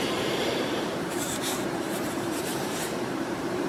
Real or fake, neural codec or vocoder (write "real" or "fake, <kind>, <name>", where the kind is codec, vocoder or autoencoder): fake, vocoder, BigVGAN v2